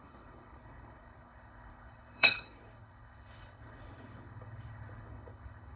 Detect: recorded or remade remade